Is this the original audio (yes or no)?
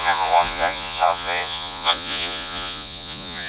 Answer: no